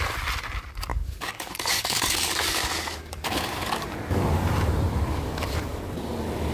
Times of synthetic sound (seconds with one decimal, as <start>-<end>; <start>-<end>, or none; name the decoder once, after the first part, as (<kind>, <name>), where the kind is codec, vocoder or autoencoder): 0.9-4.2 (codec, DAC); 5.1-5.8